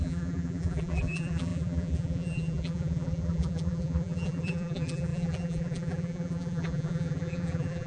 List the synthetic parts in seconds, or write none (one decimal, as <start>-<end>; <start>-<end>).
0.0-7.9